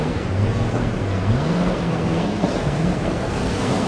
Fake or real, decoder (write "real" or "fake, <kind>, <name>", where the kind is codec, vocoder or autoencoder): fake, codec, SNAC